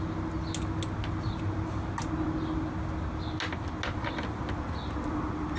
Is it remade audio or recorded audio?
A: recorded